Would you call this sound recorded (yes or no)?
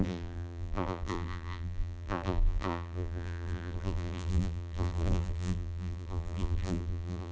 no